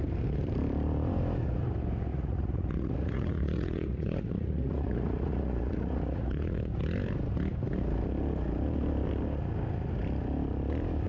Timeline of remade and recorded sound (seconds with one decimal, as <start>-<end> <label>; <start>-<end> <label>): 0.0-2.1 recorded; 2.1-6.6 remade; 6.6-11.1 recorded